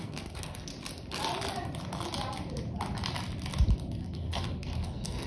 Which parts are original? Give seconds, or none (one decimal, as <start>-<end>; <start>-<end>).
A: 0.7-3.9